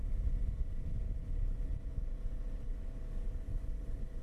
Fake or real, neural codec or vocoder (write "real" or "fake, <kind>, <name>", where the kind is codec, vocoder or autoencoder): real